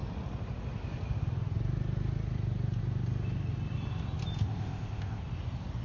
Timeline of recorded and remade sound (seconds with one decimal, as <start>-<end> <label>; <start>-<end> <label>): 0.0-4.4 recorded; 4.4-5.2 remade; 5.2-5.8 recorded